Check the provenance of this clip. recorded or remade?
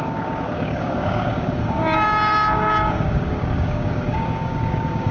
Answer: remade